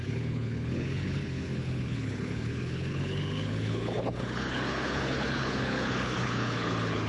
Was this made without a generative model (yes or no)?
no